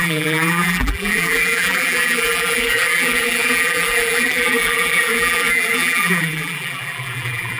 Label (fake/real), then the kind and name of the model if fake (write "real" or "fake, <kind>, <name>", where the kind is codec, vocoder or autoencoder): fake, vocoder, BigVGAN v2